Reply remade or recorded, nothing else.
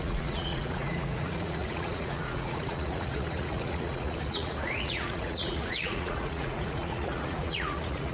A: remade